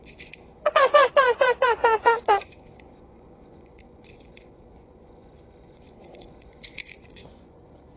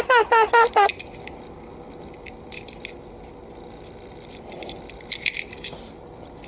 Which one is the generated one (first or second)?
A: first